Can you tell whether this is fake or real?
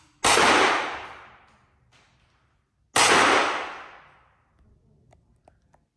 real